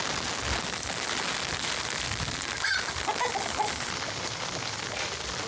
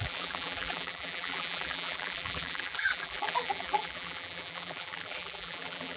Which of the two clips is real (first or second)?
first